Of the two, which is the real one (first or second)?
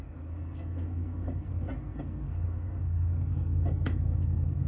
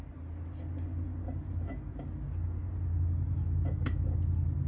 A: second